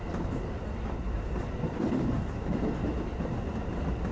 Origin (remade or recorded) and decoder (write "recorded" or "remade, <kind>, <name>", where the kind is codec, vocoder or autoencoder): recorded